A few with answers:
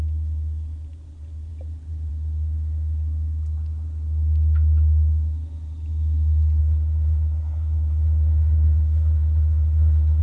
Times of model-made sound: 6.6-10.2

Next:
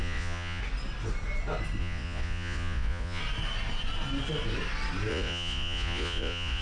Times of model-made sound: 0.0-0.6; 1.8-3.2; 5.1-6.6